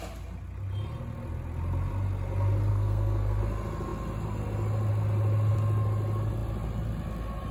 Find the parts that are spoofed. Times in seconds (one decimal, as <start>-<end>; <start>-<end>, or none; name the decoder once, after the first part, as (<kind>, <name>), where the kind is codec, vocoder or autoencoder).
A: 2.7-3.4 (codec, SNAC)